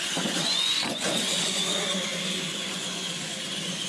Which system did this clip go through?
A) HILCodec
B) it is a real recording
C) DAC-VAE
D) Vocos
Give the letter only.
D